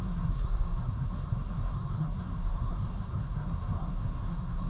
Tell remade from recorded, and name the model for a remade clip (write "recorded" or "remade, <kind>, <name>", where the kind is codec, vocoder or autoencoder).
remade, codec, SNAC